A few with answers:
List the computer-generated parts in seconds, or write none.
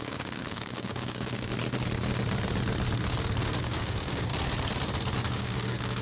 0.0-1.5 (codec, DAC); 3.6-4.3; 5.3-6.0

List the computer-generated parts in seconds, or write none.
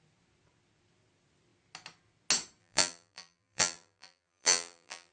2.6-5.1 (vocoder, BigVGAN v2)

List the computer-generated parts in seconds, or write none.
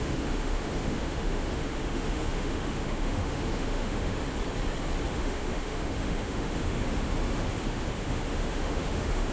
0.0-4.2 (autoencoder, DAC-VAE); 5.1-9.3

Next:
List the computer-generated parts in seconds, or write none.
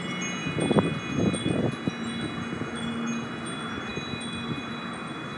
none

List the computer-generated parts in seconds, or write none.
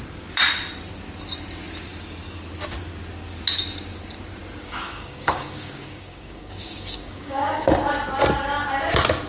4.6-7.9 (codec, DAC)